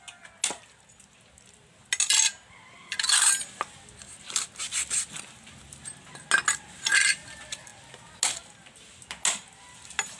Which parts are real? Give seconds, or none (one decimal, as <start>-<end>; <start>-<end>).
0.0-10.2